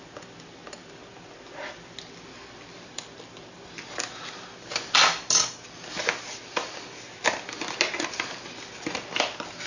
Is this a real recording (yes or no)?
yes